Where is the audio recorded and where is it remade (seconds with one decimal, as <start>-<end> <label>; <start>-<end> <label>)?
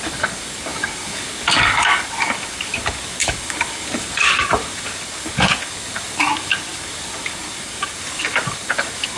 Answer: 0.0-9.2 remade